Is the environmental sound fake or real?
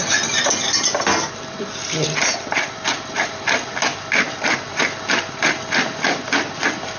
real